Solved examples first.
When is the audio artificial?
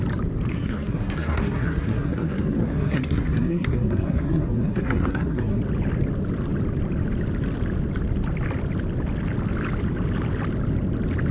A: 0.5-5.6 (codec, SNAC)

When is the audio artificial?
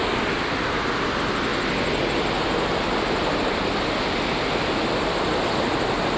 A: none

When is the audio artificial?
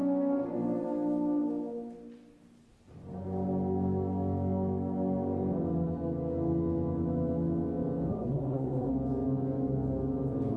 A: 8.1-8.9 (codec, SNAC)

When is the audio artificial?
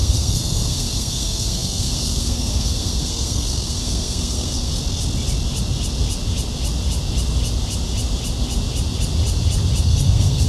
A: 0.0-4.7 (codec, SNAC); 9.8-10.5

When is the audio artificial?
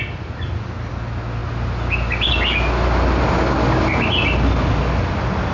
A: none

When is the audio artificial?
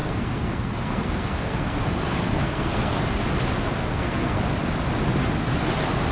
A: 0.0-3.0 (codec, SNAC); 3.9-4.4